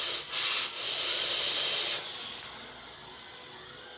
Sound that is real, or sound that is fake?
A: real